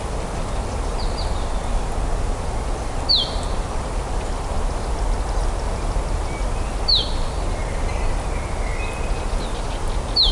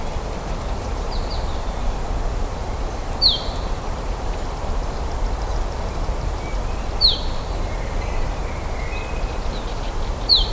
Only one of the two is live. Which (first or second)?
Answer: first